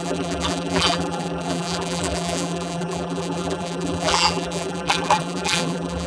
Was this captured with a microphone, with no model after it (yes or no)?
no